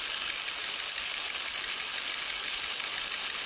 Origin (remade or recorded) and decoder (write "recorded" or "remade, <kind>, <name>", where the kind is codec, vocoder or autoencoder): recorded